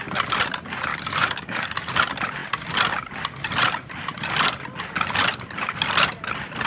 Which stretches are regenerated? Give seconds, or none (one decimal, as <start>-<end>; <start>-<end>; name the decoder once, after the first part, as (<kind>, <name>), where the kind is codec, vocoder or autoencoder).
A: 0.9-1.9 (codec, DAC)